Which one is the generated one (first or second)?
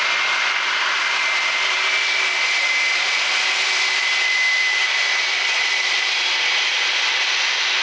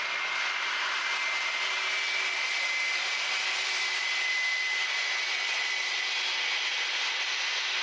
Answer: first